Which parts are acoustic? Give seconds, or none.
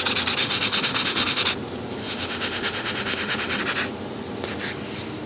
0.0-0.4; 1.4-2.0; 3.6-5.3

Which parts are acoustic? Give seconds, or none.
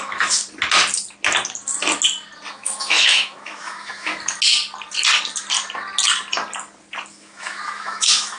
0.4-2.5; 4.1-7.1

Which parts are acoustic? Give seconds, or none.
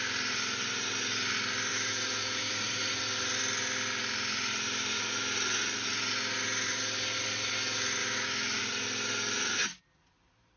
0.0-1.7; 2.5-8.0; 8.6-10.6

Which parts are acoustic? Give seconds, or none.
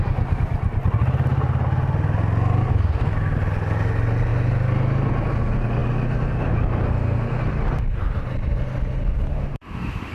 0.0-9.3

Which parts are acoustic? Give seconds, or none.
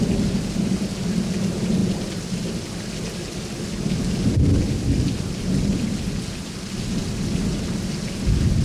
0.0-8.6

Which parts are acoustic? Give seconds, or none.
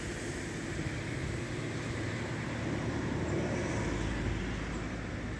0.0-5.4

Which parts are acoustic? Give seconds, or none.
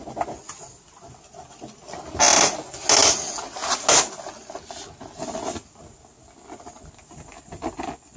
0.0-8.2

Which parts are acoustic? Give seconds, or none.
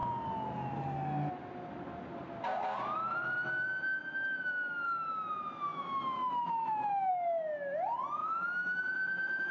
0.0-5.7; 7.1-8.2; 8.8-9.5